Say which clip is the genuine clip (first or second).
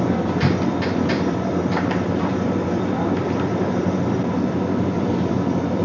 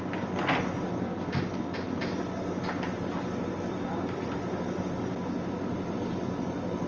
second